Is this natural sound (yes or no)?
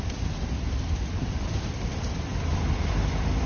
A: no